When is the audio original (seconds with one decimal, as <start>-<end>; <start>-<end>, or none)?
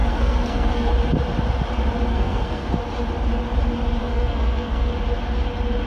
0.9-2.1; 2.7-4.0; 4.9-5.9